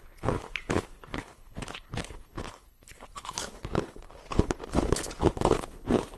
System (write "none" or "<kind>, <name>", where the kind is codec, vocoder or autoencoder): codec, HILCodec